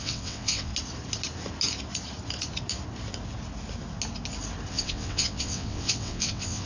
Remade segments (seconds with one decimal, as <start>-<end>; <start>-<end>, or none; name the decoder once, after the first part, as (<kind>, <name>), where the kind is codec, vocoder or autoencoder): 0.0-0.7 (vocoder, WaveNeXt); 4.7-6.7